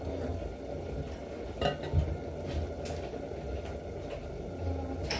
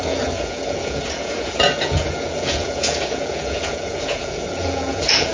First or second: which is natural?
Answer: first